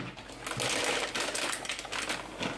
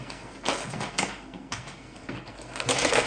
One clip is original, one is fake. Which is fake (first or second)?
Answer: second